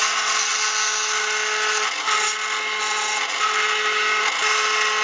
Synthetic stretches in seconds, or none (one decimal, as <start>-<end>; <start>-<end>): none